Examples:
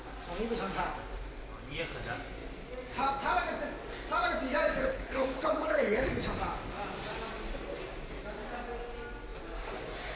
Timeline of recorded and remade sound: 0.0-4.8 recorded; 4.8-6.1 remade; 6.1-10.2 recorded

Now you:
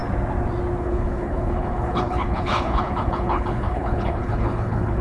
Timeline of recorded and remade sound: 0.0-0.8 recorded; 0.8-5.0 remade

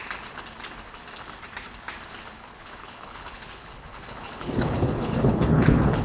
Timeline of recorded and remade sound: 0.0-2.4 recorded; 2.4-6.0 remade

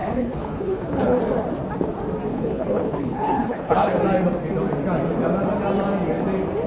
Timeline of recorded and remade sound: 0.0-1.2 remade; 1.2-2.3 recorded; 2.3-4.0 remade; 4.0-6.7 recorded